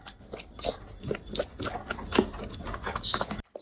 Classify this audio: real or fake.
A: real